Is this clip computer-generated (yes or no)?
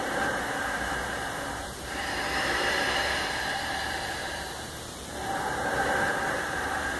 yes